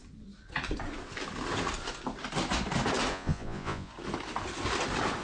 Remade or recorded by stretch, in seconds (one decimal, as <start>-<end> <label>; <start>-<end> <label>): 0.0-3.1 recorded; 3.1-3.9 remade; 3.9-5.2 recorded

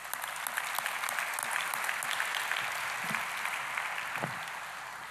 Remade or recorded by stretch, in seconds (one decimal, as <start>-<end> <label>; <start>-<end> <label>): 0.0-5.1 recorded

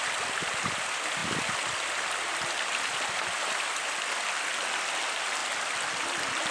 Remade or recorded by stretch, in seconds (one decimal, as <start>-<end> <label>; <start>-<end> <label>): 0.0-6.5 recorded

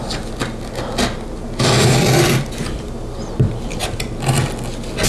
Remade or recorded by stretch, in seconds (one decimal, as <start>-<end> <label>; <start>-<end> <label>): 0.0-5.1 recorded

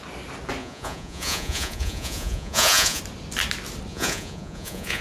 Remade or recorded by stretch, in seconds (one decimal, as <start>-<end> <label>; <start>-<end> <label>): 0.0-0.6 recorded; 0.6-3.0 remade; 3.0-3.9 recorded; 3.9-5.0 remade

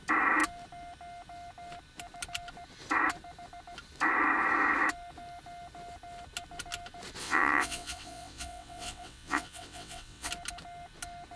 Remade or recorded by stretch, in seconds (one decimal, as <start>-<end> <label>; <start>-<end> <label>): 0.0-7.2 recorded; 7.2-10.3 remade; 10.3-11.4 recorded

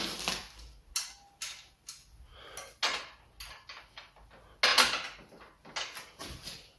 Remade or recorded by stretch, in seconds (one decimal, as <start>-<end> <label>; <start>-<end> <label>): 0.0-6.8 recorded

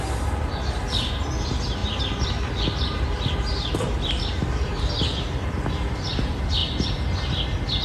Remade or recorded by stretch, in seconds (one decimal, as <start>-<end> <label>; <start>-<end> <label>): 0.0-7.8 recorded